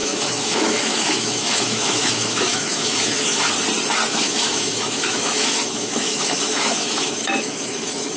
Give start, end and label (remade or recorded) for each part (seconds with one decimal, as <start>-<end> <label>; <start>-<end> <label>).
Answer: 0.0-3.5 remade; 3.5-4.1 recorded; 4.1-8.2 remade

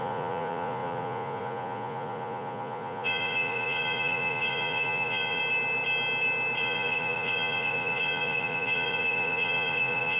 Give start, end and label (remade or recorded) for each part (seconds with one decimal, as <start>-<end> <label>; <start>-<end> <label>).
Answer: 0.0-5.4 remade; 5.4-6.6 recorded; 6.6-10.2 remade

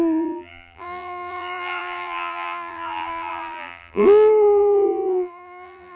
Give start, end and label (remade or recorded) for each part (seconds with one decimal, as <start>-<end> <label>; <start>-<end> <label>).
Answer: 0.0-6.0 remade

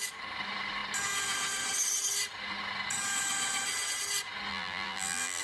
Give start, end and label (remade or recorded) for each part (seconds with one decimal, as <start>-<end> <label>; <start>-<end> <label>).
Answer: 0.0-4.5 recorded; 4.5-5.4 remade

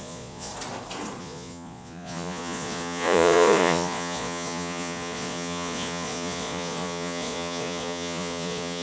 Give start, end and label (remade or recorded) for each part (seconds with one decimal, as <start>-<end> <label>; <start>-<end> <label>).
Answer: 0.0-0.5 remade; 0.5-1.2 recorded; 1.2-8.8 remade

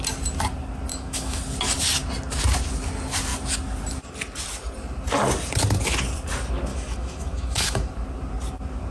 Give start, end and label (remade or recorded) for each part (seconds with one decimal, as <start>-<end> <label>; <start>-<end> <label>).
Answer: 0.0-0.9 recorded; 0.9-1.4 remade; 1.4-6.7 recorded; 6.7-7.9 remade; 7.9-8.9 recorded